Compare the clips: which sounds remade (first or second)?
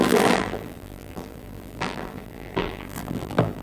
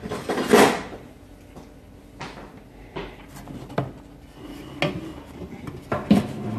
first